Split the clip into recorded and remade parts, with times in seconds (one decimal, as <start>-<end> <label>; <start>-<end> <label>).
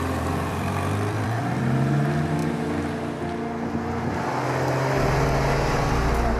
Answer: 0.0-0.5 recorded; 0.5-1.6 remade; 1.6-6.4 recorded